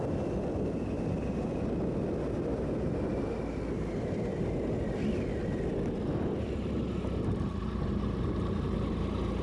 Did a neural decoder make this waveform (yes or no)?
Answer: no